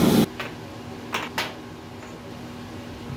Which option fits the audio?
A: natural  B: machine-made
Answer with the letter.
A